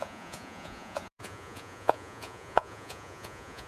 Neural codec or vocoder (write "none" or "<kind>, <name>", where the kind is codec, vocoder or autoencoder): vocoder, Vocos